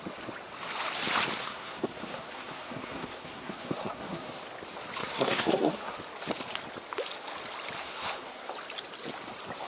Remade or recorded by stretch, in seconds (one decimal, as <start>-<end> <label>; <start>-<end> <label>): 0.0-1.4 recorded; 1.4-4.4 remade; 4.4-5.0 recorded; 5.0-5.9 remade; 5.9-7.8 recorded; 7.8-8.5 remade; 8.5-9.7 recorded